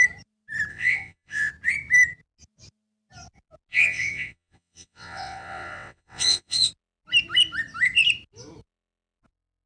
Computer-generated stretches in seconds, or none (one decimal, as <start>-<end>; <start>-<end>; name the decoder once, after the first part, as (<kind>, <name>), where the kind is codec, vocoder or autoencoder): 0.7-1.5 (vocoder, WaveNeXt); 3.7-6.7